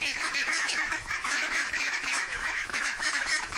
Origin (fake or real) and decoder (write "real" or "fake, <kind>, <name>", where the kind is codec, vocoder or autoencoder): fake, autoencoder, DAC-VAE